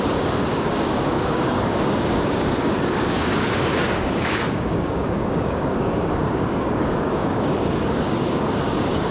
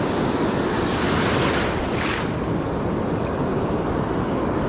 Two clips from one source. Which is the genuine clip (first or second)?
second